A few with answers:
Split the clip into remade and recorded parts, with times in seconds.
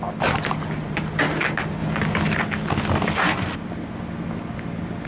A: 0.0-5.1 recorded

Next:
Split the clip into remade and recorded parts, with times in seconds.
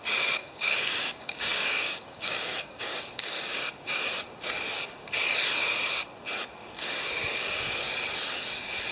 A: 0.0-0.4 recorded; 0.4-4.0 remade; 4.0-8.9 recorded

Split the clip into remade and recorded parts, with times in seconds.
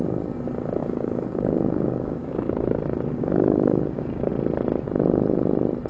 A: 0.0-0.8 recorded; 0.8-4.3 remade; 4.3-5.9 recorded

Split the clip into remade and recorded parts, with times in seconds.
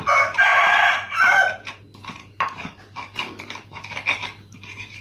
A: 0.0-2.2 recorded; 2.2-5.0 remade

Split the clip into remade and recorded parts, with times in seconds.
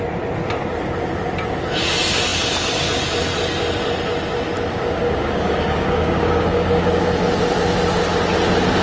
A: 0.0-4.7 recorded; 4.7-7.1 remade; 7.1-8.8 recorded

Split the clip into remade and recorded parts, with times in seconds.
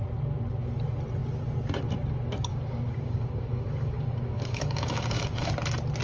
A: 0.0-2.5 recorded; 2.5-5.5 remade; 5.5-6.0 recorded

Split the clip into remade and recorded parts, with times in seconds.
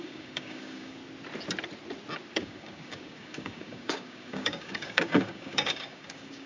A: 0.0-1.0 remade; 1.0-2.3 recorded; 2.3-6.5 remade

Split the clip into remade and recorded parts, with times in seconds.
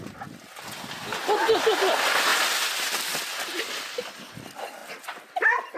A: 0.0-5.8 recorded